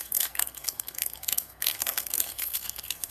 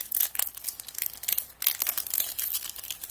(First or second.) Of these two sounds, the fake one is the first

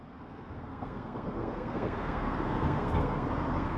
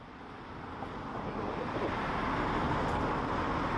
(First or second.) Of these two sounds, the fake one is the first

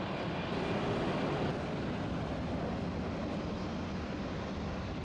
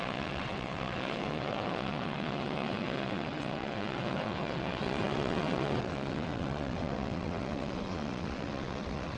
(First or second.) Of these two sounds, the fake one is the second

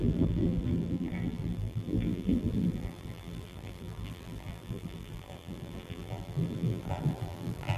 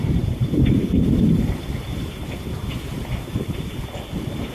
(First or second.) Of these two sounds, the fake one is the first